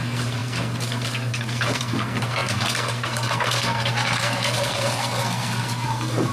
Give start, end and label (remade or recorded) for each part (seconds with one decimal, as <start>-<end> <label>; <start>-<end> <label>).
0.0-6.3 remade